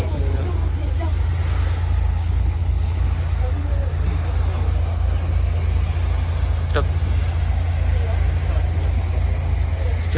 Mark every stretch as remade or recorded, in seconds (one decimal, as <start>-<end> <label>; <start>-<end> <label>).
0.0-2.1 recorded; 2.1-3.0 remade; 3.0-10.2 recorded